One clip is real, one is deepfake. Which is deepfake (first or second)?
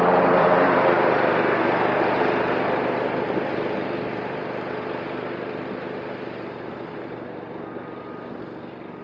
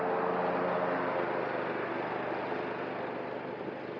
first